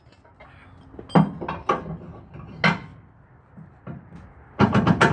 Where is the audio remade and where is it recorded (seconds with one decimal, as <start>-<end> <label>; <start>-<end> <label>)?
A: 0.0-2.9 recorded; 2.9-5.1 remade